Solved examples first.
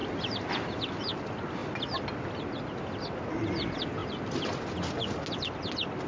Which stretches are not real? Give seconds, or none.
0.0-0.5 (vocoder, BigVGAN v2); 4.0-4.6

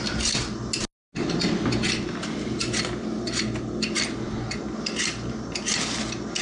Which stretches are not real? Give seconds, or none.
none

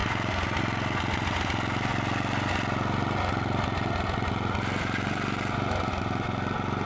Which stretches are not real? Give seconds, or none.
none

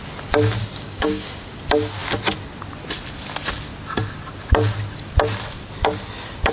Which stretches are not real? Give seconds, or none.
0.6-1.6 (codec, DAC)